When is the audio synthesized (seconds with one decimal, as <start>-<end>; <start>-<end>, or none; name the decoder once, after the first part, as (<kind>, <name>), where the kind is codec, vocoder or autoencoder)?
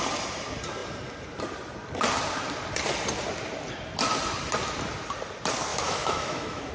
5.7-6.7 (autoencoder, DAC-VAE)